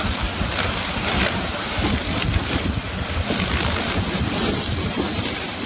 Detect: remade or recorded remade